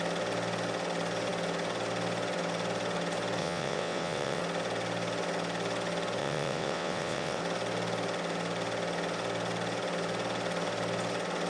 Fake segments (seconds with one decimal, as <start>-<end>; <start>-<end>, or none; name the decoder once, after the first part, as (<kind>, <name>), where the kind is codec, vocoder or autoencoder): 3.4-4.4 (vocoder, WaveNeXt); 6.2-7.4